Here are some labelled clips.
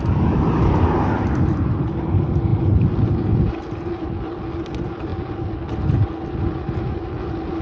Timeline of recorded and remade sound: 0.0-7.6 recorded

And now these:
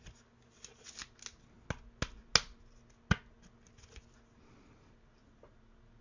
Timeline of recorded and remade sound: 0.0-6.0 recorded

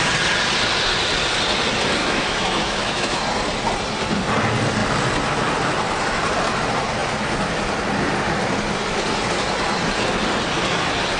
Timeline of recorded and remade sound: 0.0-2.0 recorded; 2.0-3.2 remade; 3.2-11.2 recorded